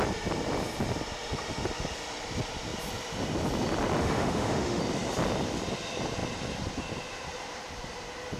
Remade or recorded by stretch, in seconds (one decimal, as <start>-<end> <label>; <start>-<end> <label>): 0.0-4.0 recorded; 4.0-4.8 remade; 4.8-8.4 recorded